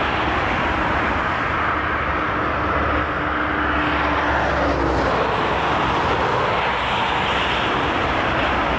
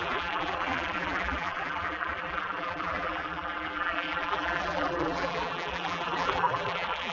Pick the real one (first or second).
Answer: first